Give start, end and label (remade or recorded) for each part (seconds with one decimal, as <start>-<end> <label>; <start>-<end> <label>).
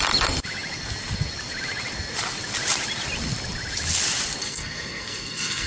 0.0-4.4 recorded; 4.4-5.7 remade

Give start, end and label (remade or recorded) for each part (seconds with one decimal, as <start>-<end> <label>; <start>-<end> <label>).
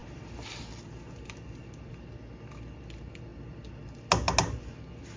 0.0-5.2 recorded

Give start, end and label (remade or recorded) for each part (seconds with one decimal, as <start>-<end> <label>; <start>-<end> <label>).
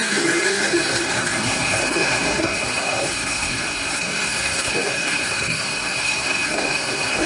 0.0-7.3 remade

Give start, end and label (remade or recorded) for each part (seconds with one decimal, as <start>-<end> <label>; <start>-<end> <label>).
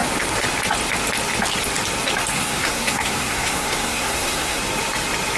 0.0-2.3 recorded; 2.3-4.6 remade; 4.6-5.4 recorded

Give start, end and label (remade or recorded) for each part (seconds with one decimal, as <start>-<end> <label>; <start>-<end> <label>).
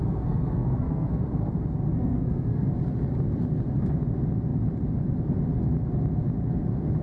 0.0-1.2 remade; 1.2-1.9 recorded; 1.9-2.7 remade; 2.7-7.0 recorded